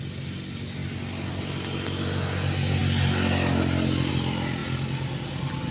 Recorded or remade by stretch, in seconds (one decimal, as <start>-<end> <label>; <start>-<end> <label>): 0.0-5.7 recorded